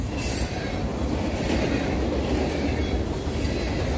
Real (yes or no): yes